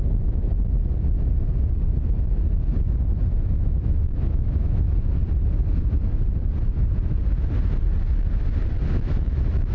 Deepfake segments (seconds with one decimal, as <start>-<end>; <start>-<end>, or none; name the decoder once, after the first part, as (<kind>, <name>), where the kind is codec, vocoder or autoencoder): 0.0-0.4 (autoencoder, DAC-VAE); 3.3-5.2; 8.9-9.7